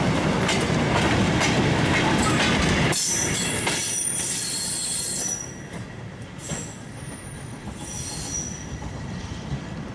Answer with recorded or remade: recorded